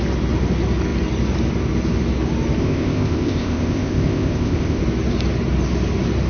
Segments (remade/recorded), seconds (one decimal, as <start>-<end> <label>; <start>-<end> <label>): 0.0-2.6 recorded; 2.6-4.8 remade; 4.8-6.3 recorded